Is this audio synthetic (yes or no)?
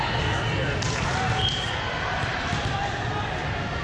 no